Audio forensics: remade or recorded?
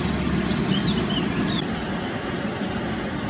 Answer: recorded